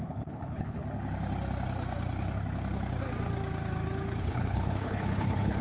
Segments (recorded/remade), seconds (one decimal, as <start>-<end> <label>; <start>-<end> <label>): 0.0-0.8 remade; 0.8-4.2 recorded; 4.2-5.6 remade